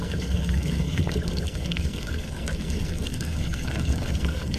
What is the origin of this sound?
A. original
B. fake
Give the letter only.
B